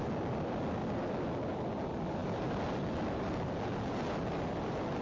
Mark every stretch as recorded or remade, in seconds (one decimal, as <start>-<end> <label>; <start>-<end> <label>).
0.0-5.0 recorded

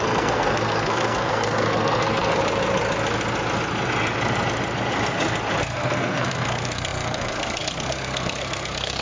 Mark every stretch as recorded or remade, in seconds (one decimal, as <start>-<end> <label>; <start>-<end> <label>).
0.0-2.4 remade; 2.4-5.6 recorded; 5.6-9.0 remade

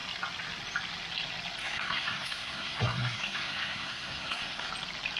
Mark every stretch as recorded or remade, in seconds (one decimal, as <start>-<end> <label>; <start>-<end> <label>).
0.0-1.6 recorded; 1.6-4.7 remade; 4.7-5.2 recorded

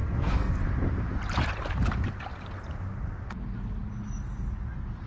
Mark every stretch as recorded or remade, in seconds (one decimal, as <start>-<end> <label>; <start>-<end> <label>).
0.0-0.6 remade; 0.6-5.1 recorded

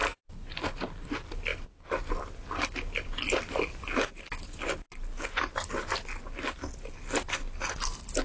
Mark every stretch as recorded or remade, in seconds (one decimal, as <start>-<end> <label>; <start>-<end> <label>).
0.0-8.2 recorded

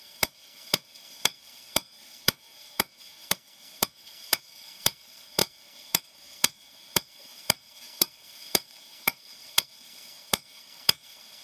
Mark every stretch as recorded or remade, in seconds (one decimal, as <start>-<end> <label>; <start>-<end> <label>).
0.0-11.4 remade